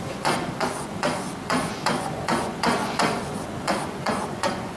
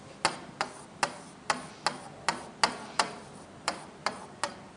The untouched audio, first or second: second